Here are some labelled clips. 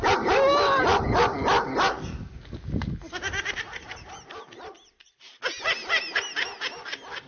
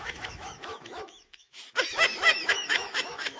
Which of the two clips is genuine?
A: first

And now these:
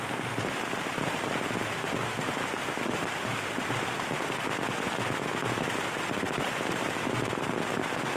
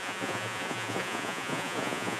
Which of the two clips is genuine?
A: first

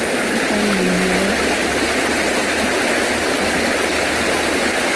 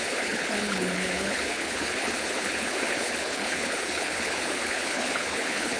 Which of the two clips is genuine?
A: first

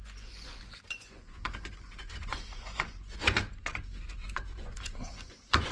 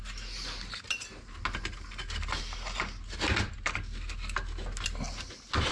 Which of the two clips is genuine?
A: second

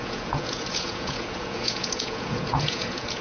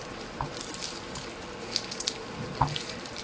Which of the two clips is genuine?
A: second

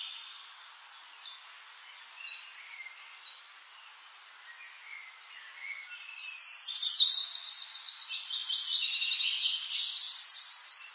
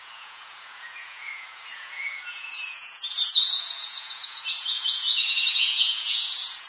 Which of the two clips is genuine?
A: first